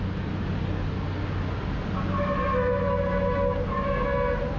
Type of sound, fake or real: real